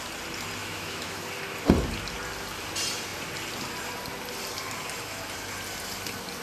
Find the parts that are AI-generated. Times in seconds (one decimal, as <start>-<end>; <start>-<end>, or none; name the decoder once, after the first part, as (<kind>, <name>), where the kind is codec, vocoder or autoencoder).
0.6-1.2 (autoencoder, DAC-VAE)